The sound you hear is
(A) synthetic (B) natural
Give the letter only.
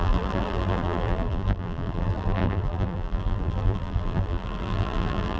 A